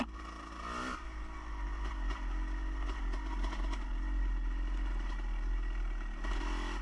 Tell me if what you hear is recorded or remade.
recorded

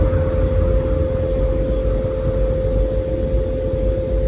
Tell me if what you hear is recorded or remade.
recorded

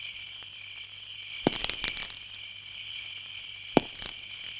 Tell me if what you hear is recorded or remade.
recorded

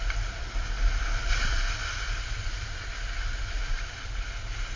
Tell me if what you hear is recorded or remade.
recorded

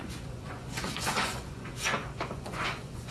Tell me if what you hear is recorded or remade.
remade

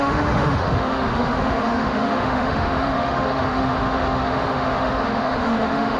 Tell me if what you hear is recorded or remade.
remade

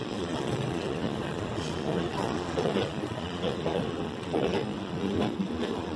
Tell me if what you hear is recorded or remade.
remade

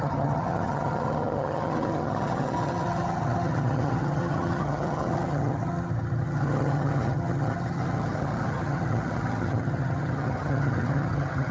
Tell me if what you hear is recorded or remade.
remade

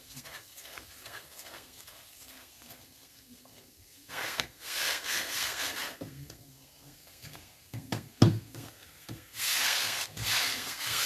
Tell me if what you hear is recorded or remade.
remade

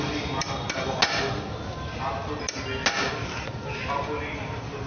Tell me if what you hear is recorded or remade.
recorded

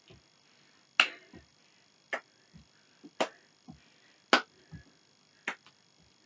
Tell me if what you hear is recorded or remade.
recorded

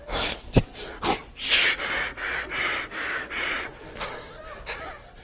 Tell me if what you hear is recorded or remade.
recorded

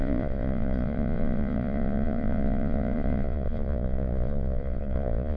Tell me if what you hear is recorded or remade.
remade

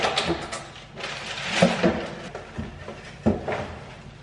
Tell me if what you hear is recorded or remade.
recorded